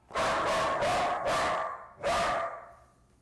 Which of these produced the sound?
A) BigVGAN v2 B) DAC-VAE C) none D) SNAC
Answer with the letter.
C